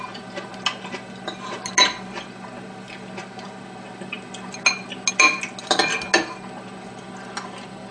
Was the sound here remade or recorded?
recorded